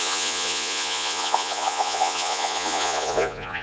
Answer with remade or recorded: remade